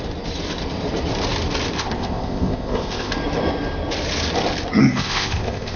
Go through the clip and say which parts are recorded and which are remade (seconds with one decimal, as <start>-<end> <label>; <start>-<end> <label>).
0.0-1.8 recorded; 1.8-3.1 remade; 3.1-4.8 recorded; 4.8-5.8 remade